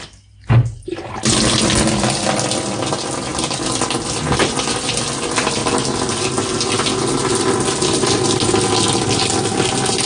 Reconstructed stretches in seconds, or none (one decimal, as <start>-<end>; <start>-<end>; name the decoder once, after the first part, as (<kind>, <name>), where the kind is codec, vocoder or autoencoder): none